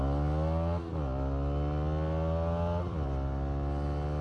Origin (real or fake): real